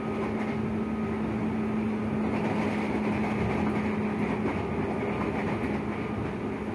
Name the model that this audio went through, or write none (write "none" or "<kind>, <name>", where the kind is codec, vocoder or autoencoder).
none